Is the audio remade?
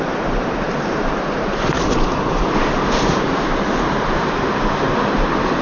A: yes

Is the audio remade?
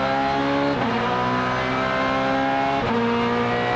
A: no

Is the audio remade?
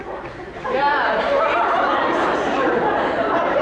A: yes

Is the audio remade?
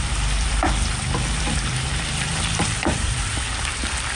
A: yes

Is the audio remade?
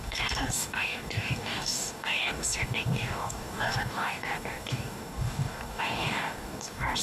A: yes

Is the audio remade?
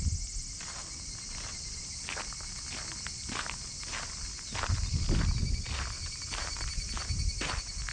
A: no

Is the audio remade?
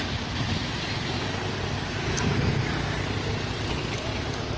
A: no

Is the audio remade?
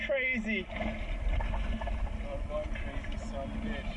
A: no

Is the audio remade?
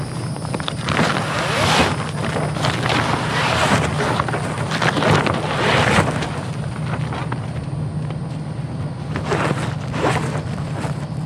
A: no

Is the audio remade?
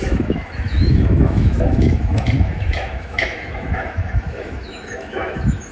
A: yes